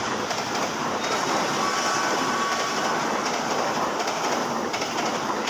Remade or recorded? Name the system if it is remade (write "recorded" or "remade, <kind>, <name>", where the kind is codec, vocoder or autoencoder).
recorded